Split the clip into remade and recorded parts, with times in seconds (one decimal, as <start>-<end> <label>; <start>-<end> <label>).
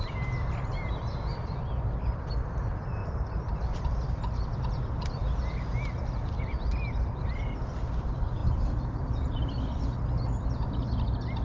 0.0-3.0 recorded; 3.0-3.6 remade; 3.6-8.4 recorded; 8.4-9.6 remade; 9.6-11.4 recorded